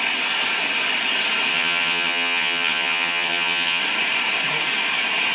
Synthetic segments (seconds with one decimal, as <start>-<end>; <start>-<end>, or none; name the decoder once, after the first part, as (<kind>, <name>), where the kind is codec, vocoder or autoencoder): 1.5-3.8 (vocoder, HiFi-GAN)